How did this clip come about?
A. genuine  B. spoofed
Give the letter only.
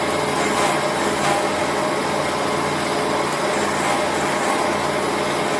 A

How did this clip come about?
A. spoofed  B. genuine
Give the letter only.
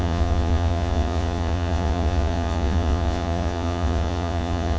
A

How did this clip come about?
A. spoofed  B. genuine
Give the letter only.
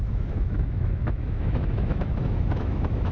A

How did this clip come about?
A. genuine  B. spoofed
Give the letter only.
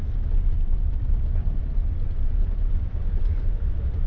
A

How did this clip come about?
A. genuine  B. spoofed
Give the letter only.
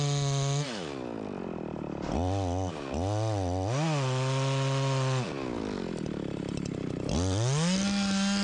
A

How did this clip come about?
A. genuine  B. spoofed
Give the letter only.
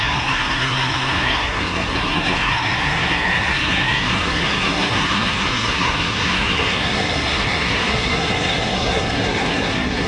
B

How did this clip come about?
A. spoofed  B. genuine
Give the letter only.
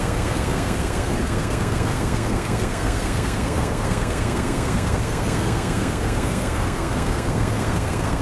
A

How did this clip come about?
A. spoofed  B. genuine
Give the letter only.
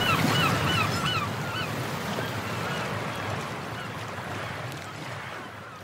B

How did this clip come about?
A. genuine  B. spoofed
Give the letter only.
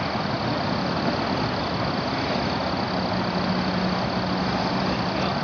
A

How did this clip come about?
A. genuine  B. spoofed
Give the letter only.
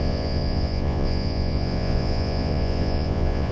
B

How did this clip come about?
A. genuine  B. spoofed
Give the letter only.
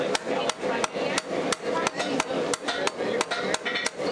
A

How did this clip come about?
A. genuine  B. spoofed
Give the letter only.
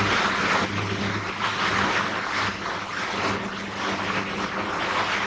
A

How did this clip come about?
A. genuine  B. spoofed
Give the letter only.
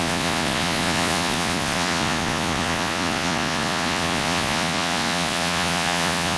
B